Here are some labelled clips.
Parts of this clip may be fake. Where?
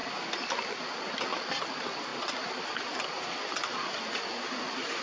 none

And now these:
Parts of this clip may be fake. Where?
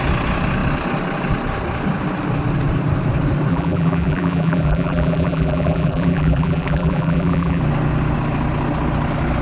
3.5-7.6 (vocoder, BigVGAN v2)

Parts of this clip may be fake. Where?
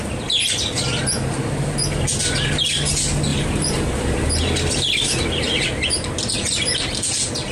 3.3-4.3 (vocoder, BigVGAN v2)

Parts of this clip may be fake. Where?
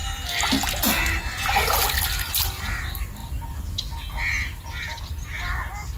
0.0-0.6 (vocoder, BigVGAN v2)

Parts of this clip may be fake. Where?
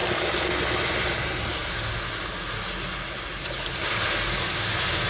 none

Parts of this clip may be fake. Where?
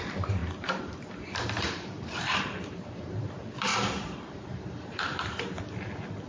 0.4-3.3 (vocoder, BigVGAN v2); 3.7-5.6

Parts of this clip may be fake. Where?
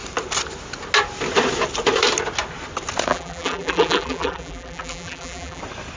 3.1-5.6 (vocoder, BigVGAN v2)